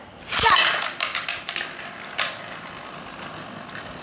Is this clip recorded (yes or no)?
yes